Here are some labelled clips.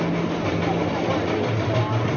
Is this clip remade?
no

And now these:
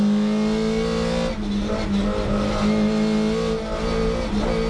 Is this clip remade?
no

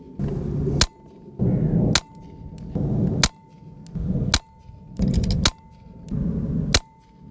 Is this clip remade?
no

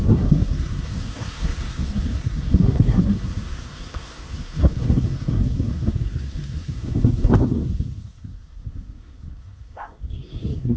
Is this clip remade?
yes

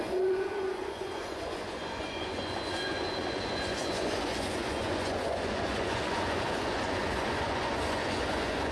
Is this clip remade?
yes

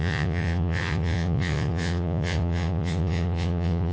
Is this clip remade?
yes